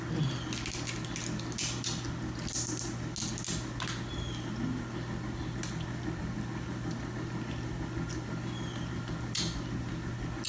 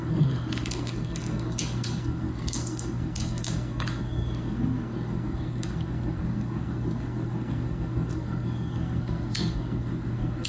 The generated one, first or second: second